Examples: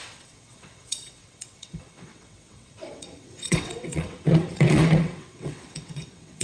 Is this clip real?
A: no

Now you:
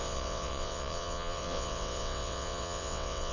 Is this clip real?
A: no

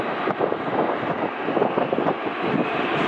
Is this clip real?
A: yes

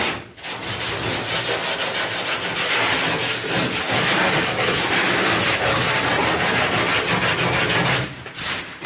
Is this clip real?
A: yes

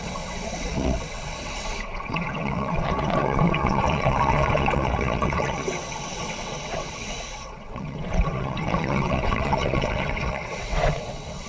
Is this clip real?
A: no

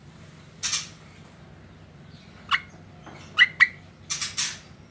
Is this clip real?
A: yes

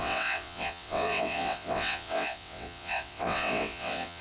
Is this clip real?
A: no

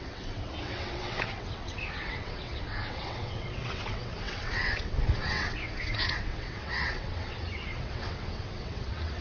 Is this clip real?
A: no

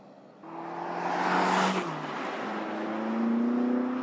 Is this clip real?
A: yes